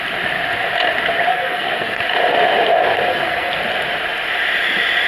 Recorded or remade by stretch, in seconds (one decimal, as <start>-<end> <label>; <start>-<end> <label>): 0.0-1.3 recorded; 1.3-2.0 remade; 2.0-3.1 recorded; 3.1-3.6 remade; 3.6-5.1 recorded